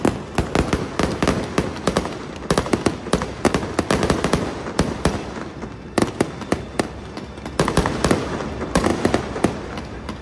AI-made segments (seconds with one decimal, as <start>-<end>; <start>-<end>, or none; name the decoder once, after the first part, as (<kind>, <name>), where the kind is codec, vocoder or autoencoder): none